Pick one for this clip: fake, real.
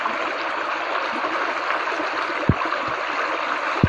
real